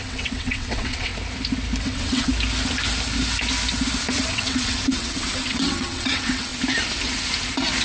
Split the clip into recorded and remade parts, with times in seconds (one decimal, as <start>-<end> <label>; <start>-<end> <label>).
0.0-1.1 remade; 1.1-1.8 recorded; 1.8-2.3 remade; 2.3-4.2 recorded; 4.2-6.5 remade; 6.5-7.8 recorded